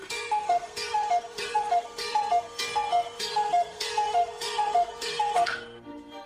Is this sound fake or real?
fake